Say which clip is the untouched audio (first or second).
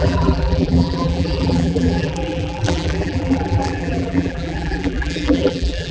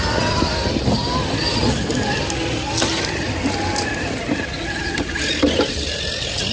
second